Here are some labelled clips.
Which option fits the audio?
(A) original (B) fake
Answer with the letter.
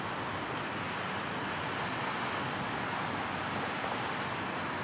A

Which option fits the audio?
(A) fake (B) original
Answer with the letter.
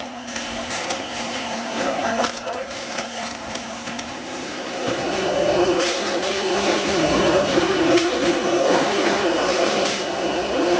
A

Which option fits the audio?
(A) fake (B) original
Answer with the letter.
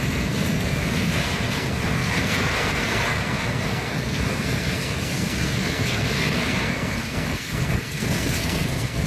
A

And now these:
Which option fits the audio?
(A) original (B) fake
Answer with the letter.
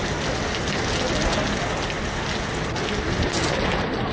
A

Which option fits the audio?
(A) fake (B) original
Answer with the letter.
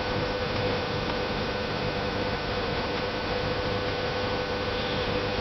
A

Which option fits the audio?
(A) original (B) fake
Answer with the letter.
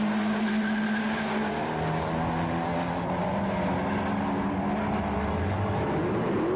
A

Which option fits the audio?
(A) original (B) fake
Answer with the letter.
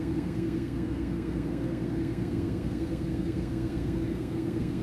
B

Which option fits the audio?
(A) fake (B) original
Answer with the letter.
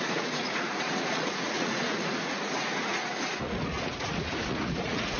A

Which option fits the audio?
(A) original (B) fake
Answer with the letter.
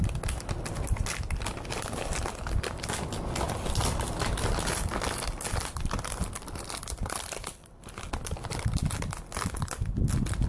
A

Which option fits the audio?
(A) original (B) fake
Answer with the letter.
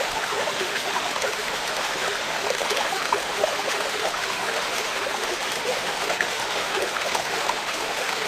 B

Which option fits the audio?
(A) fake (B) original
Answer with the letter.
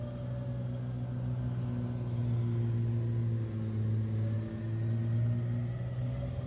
B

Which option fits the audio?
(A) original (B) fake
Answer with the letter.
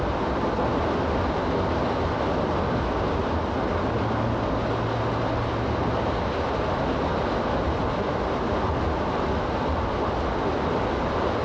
A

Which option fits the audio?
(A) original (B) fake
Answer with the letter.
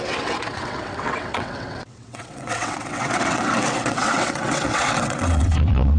B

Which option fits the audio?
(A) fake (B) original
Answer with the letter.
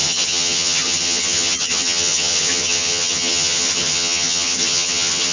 A